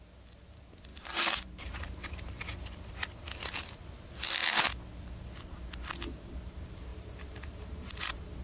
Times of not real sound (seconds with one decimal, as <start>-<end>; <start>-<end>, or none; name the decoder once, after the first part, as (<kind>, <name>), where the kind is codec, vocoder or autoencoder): 0.9-2.4 (vocoder, BigVGAN v2); 6.9-8.0